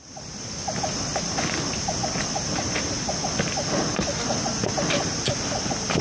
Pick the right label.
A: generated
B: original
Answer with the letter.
B